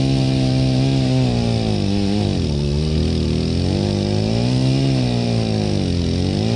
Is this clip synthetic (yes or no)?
no